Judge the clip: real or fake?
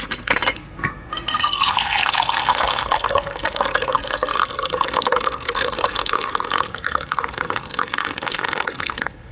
fake